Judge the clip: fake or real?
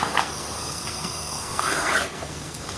fake